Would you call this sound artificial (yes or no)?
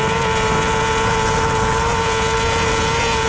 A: no